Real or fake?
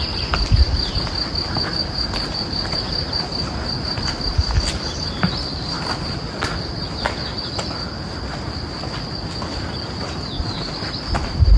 real